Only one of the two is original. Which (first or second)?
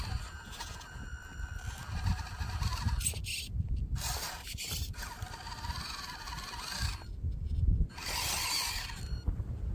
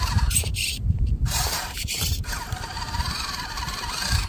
first